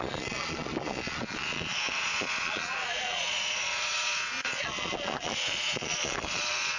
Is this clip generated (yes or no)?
yes